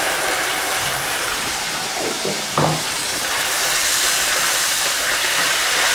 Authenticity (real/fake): fake